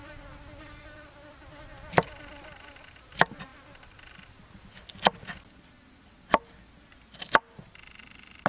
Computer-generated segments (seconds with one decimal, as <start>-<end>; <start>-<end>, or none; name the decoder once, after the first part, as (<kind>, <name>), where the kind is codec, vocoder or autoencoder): none